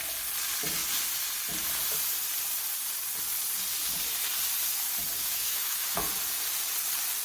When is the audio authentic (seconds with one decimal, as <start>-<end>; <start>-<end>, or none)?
0.0-5.2; 6.0-7.2